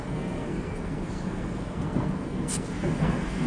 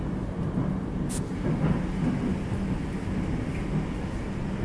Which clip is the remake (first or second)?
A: first